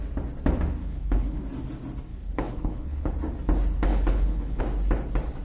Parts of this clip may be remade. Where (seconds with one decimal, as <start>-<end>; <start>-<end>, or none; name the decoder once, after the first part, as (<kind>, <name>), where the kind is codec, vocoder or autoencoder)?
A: 0.8-1.4 (codec, HILCodec); 2.1-3.1; 3.9-4.6